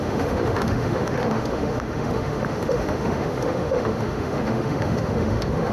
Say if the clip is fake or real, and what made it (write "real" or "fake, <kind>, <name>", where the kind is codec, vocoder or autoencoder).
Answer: fake, autoencoder, DAC-VAE